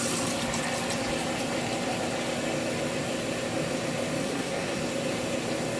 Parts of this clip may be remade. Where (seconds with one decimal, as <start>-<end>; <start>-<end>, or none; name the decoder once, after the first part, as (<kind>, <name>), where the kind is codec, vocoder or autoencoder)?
4.2-4.8 (codec, SNAC)